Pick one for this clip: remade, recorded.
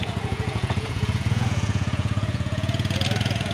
remade